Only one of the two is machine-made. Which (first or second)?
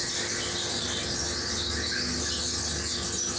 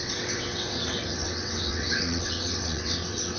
second